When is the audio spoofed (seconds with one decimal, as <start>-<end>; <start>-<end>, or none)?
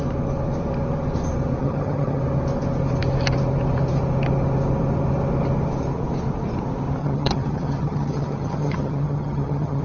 1.6-2.2; 7.0-9.8